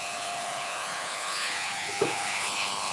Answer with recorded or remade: remade